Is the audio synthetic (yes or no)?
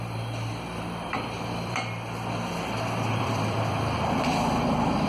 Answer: yes